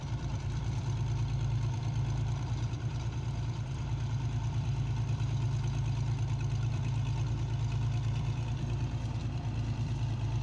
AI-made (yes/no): yes